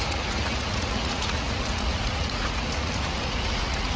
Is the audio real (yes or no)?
no